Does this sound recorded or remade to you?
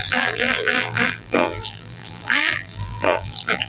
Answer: remade